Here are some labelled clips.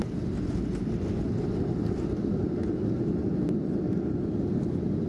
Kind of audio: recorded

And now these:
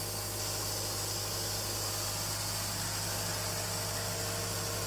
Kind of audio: recorded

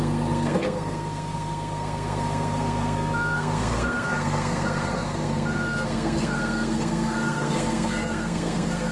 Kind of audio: remade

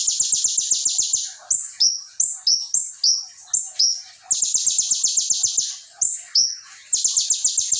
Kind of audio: recorded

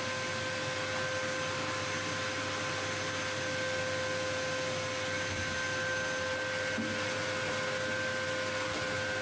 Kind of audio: recorded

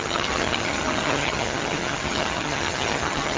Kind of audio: remade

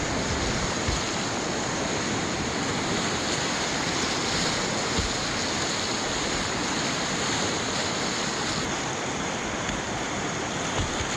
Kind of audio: recorded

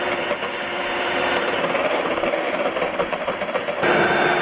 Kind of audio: remade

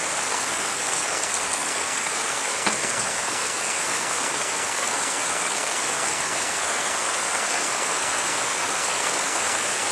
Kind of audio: remade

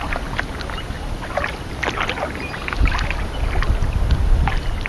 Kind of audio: recorded